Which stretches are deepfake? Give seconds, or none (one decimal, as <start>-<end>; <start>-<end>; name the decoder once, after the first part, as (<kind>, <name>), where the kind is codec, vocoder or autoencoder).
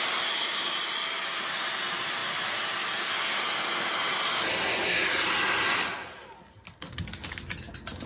none